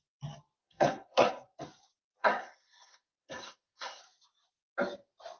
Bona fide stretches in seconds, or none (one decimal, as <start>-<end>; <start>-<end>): 0.0-0.6; 1.3-2.2; 4.0-5.4